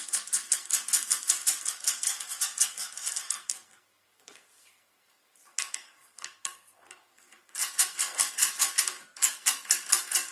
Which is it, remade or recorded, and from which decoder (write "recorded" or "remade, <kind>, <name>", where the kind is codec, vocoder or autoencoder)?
remade, codec, SNAC